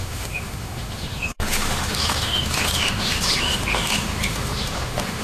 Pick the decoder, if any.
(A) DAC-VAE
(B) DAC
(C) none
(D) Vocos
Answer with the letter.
A